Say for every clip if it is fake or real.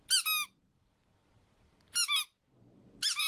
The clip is real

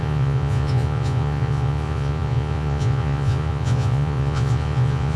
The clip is fake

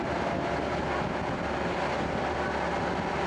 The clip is real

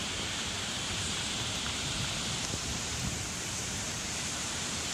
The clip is fake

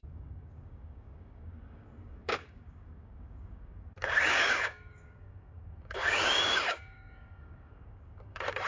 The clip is fake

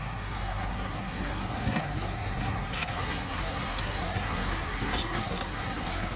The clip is fake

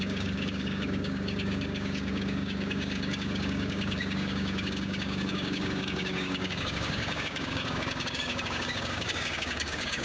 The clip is fake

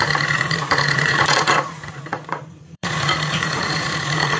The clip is fake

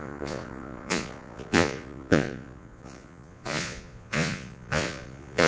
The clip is fake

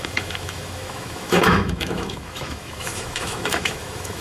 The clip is fake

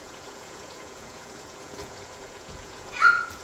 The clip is fake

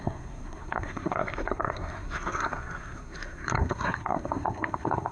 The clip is fake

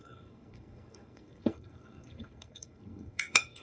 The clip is fake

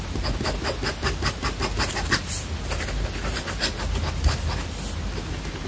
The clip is real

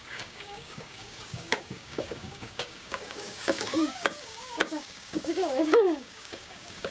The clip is fake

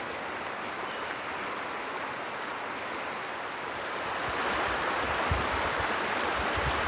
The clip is real